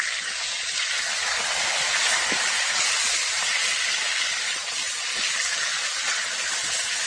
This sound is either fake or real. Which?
real